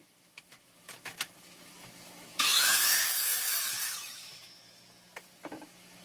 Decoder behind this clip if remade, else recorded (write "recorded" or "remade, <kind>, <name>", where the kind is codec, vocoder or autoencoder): remade, autoencoder, DAC-VAE